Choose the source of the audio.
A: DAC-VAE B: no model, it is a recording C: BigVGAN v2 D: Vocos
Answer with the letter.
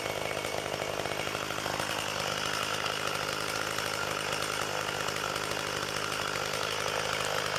B